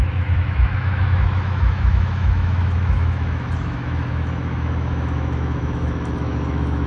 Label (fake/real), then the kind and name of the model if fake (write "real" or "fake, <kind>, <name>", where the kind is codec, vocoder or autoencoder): fake, autoencoder, DAC-VAE